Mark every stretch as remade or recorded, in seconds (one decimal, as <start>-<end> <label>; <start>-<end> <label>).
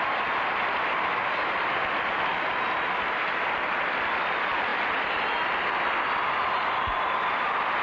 0.0-7.8 recorded